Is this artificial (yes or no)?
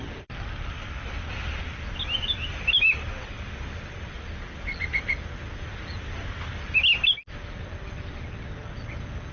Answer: no